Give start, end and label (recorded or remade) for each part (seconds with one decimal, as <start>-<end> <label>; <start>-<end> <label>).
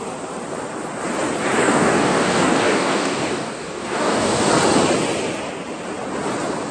0.0-1.6 recorded; 1.6-4.5 remade; 4.5-6.7 recorded